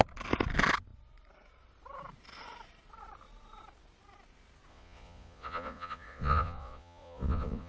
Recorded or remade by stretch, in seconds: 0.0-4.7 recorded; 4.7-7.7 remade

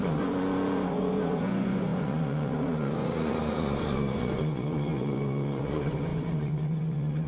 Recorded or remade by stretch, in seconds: 0.0-7.3 remade